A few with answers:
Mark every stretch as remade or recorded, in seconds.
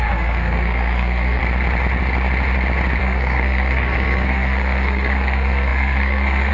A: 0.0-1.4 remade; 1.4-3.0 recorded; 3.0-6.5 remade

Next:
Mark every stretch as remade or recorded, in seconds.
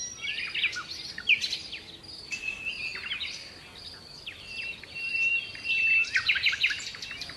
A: 0.0-2.9 remade; 2.9-3.8 recorded; 3.8-7.4 remade